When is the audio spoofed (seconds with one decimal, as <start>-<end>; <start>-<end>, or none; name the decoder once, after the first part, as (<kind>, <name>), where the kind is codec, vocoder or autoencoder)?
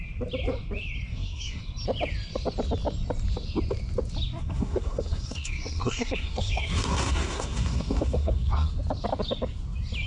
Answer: 1.1-1.6 (codec, SNAC); 4.4-8.8